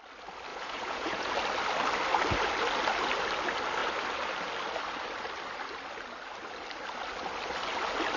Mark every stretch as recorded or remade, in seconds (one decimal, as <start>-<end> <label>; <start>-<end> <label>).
0.0-0.5 recorded; 0.5-1.3 remade; 1.3-8.2 recorded